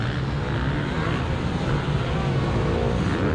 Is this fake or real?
real